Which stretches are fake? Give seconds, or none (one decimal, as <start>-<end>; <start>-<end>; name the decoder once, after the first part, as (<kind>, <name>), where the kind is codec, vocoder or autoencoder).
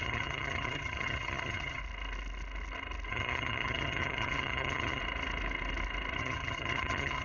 0.0-1.8 (vocoder, HiFi-GAN); 3.1-5.0; 6.2-7.2